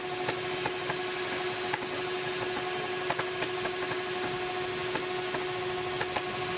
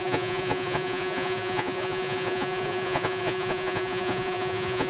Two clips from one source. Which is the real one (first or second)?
first